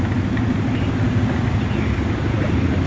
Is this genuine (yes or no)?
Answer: yes